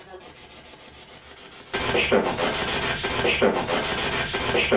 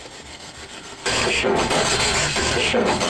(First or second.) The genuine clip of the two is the first